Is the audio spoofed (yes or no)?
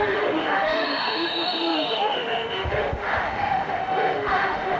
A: yes